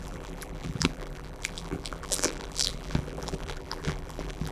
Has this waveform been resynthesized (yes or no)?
yes